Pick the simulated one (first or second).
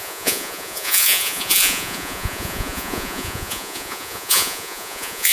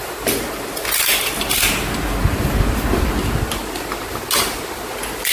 first